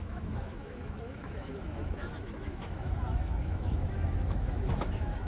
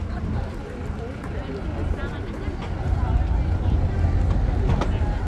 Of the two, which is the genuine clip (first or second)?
second